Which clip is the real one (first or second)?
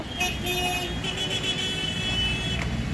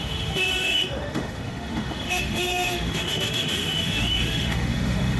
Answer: first